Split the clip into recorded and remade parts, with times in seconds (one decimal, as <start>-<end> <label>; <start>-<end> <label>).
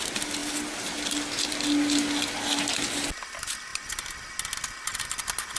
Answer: 0.0-5.6 recorded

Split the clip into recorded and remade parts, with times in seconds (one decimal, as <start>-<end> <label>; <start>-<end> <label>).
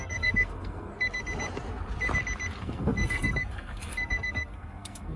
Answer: 0.0-0.9 remade; 0.9-2.6 recorded; 2.6-5.2 remade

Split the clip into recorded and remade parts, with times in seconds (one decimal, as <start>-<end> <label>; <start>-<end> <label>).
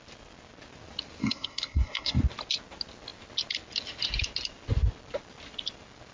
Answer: 0.0-1.2 recorded; 1.2-2.2 remade; 2.2-6.1 recorded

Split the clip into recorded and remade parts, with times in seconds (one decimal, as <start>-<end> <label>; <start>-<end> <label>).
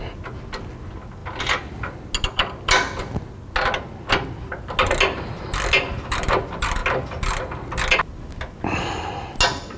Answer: 0.0-9.8 recorded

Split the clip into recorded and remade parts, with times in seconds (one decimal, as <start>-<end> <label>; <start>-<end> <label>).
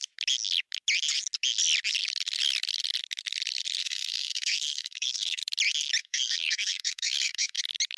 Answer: 0.0-3.8 recorded; 3.8-5.4 remade; 5.4-6.0 recorded; 6.0-7.6 remade; 7.6-8.0 recorded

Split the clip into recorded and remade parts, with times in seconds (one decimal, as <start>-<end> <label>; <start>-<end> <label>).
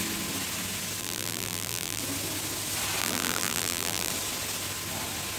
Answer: 0.0-1.0 recorded; 1.0-2.0 remade; 2.0-3.0 recorded; 3.0-4.1 remade; 4.1-5.4 recorded